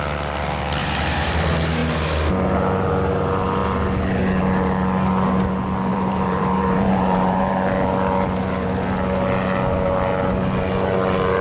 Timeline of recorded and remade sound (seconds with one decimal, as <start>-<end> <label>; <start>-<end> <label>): 0.0-0.8 recorded; 0.8-1.3 remade; 1.3-5.9 recorded; 5.9-7.5 remade; 7.5-11.4 recorded